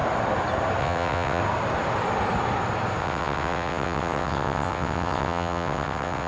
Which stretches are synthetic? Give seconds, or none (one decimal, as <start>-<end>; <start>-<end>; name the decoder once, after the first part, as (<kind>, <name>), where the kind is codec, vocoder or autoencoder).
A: 0.8-1.4 (vocoder, WaveNeXt); 3.0-6.3